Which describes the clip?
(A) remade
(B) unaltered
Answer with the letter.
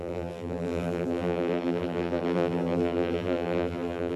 A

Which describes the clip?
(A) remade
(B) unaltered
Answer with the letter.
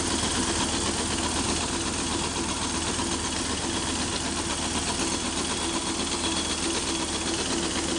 B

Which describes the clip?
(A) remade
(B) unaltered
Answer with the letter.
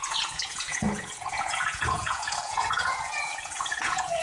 A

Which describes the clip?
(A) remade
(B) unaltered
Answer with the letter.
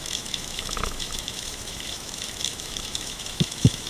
A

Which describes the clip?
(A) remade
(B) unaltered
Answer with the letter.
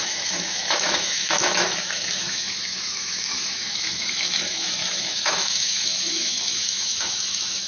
A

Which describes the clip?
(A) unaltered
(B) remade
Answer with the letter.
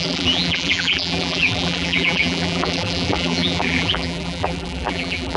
B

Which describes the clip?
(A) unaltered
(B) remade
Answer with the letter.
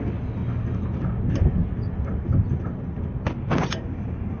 A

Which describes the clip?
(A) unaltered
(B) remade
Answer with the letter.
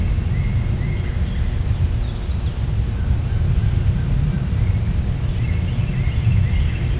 A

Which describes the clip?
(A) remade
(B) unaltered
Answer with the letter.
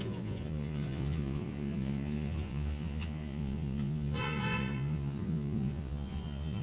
A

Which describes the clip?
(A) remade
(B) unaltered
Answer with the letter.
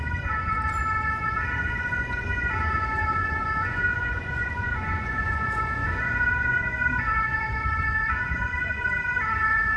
A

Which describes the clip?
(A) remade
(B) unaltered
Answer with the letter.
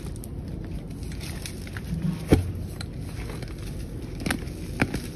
B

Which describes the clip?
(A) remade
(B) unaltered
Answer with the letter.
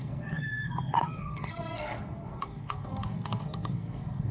A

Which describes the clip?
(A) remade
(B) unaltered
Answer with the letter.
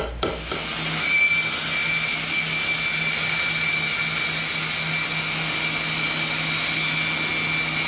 B